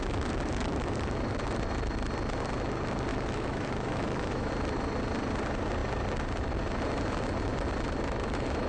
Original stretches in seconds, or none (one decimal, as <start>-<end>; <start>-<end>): 0.0-3.1; 4.5-8.7